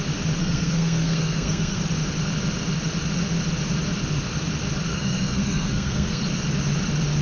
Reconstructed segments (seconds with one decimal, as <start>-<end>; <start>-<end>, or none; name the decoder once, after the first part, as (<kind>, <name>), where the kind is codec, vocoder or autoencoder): 0.4-1.8 (codec, SNAC); 4.9-6.2